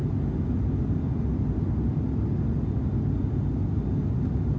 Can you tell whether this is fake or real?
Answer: real